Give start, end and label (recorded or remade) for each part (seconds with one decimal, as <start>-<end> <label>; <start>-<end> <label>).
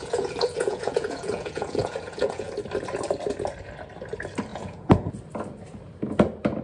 0.0-2.5 remade; 2.5-4.5 recorded; 4.5-5.1 remade; 5.1-6.6 recorded